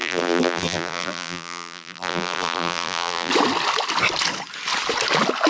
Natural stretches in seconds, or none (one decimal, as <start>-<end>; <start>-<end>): 3.3-5.5